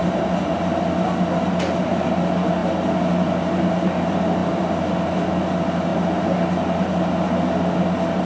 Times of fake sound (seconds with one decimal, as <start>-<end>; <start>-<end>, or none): none